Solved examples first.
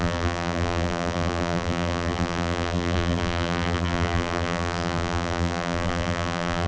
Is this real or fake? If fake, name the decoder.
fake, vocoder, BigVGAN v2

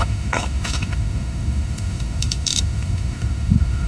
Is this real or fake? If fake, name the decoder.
fake, autoencoder, DAC-VAE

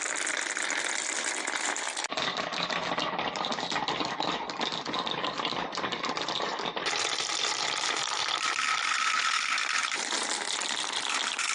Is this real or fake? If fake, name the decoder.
real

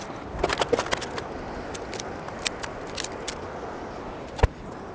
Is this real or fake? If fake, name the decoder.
real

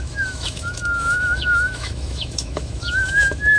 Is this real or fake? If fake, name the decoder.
fake, autoencoder, DAC-VAE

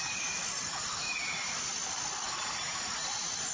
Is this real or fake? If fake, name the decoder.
real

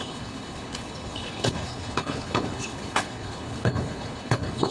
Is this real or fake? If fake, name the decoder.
fake, codec, HILCodec